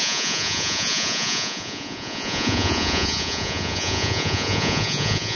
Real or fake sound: fake